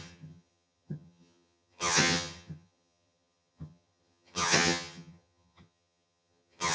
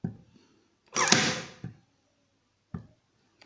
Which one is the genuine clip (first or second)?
second